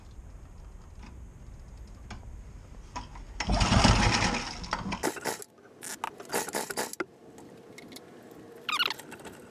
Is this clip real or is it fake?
real